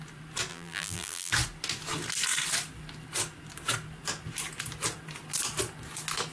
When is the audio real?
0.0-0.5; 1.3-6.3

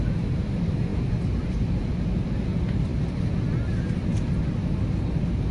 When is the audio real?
0.0-5.5